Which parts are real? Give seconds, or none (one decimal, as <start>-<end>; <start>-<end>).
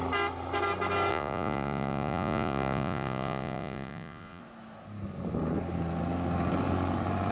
0.0-1.1; 4.4-7.3